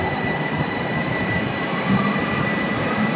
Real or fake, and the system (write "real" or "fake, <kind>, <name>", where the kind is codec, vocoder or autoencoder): fake, vocoder, BigVGAN v2